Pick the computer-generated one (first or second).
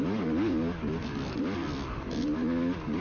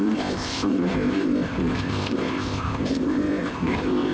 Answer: second